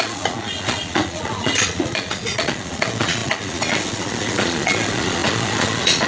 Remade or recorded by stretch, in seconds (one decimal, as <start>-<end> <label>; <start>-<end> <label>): 0.0-6.1 remade